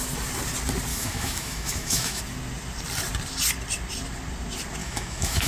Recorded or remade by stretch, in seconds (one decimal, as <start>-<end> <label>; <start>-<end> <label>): 0.0-0.9 recorded; 0.9-2.2 remade; 2.2-4.8 recorded; 4.8-5.5 remade